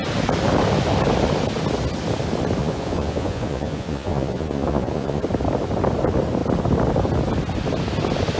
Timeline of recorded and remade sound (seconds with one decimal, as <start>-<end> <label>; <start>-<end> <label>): 0.0-2.6 recorded; 2.6-5.2 remade; 5.2-8.4 recorded